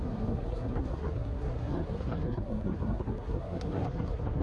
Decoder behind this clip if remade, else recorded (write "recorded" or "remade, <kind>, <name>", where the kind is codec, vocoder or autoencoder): remade, codec, SNAC